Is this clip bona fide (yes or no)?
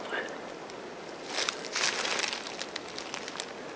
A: yes